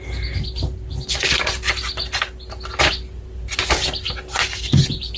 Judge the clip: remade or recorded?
recorded